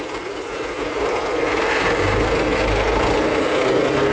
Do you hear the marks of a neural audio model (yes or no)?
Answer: no